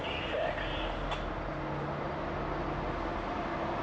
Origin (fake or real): real